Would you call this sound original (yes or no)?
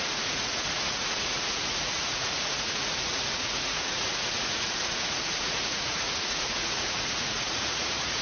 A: no